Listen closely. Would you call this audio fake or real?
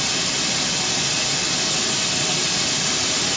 real